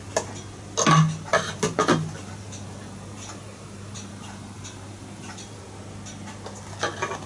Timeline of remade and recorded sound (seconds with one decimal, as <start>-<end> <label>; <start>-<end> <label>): 0.0-1.3 recorded; 1.3-5.6 remade; 5.6-7.3 recorded